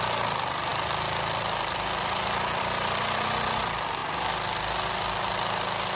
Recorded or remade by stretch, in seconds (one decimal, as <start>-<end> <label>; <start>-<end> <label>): 0.0-6.0 recorded